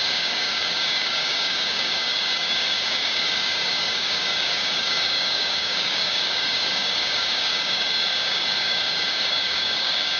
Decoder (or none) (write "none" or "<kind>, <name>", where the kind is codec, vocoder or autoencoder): codec, DAC